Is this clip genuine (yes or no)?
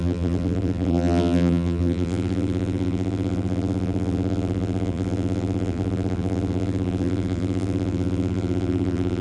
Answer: no